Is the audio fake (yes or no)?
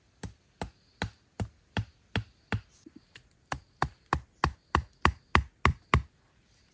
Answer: no